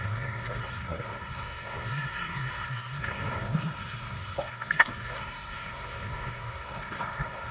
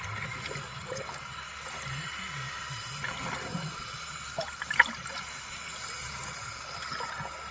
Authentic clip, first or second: second